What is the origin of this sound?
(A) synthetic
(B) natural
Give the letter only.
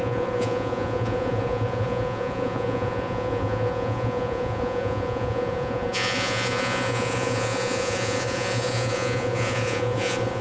A